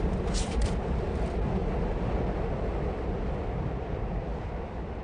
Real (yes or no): no